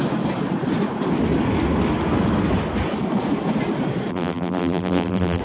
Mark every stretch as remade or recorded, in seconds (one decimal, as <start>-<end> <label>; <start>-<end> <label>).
0.0-4.1 recorded; 4.1-5.4 remade